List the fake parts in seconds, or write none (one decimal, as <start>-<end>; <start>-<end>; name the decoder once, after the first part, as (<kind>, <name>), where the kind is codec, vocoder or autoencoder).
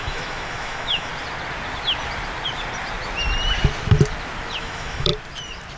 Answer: 0.0-1.1 (autoencoder, DAC-VAE); 4.6-5.1